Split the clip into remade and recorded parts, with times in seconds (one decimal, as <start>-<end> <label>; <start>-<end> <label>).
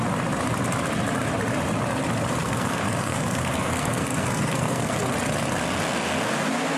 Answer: 0.0-2.4 recorded; 2.4-5.0 remade; 5.0-6.8 recorded